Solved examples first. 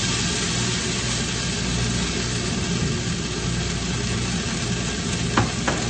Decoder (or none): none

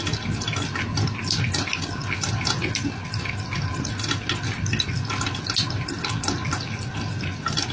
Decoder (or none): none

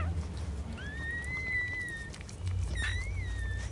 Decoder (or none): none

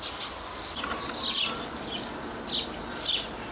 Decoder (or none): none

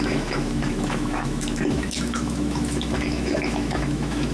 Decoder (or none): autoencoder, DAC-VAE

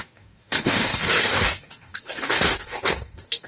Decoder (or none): codec, DAC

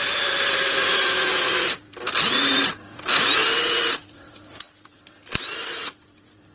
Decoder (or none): none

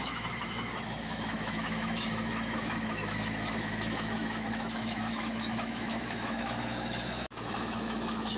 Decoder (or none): autoencoder, DAC-VAE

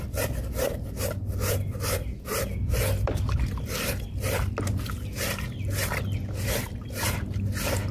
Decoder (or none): none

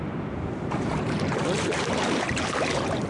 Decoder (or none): vocoder, BigVGAN v2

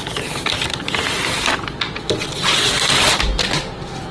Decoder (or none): none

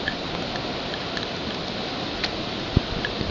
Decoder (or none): none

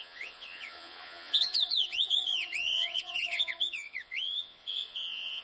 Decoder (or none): vocoder, Vocos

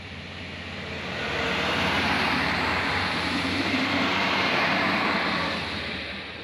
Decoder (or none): vocoder, BigVGAN v2